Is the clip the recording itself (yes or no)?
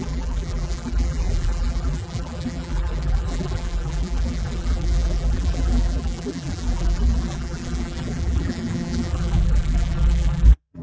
no